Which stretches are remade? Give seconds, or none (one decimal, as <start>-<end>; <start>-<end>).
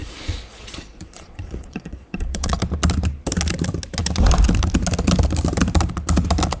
0.0-2.6